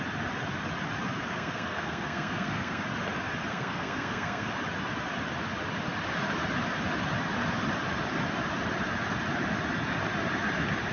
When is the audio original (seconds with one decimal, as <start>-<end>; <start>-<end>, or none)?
0.0-1.3; 2.8-3.5; 4.5-10.9